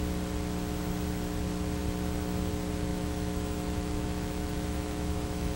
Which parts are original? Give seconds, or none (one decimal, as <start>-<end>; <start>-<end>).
0.0-2.9